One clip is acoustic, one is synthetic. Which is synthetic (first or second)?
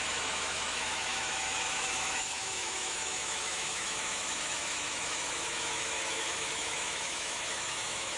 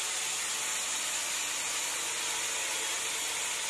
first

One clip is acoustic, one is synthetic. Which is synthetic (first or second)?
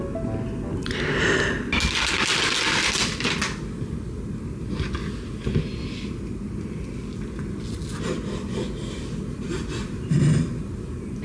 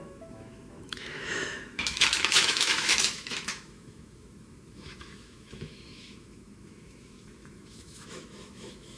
second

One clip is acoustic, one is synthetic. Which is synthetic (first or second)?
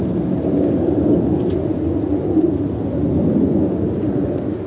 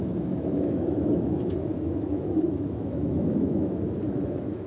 second